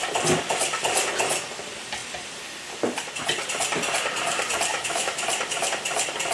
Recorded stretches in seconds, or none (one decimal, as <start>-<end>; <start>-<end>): 0.0-4.7; 5.2-6.3

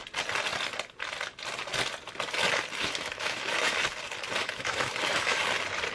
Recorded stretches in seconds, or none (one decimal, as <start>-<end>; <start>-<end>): 0.0-2.8; 3.7-4.4; 5.4-5.9